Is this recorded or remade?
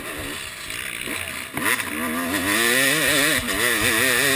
recorded